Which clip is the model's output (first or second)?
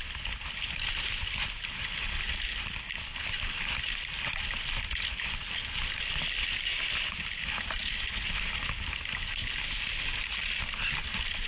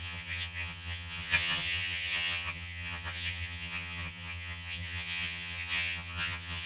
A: second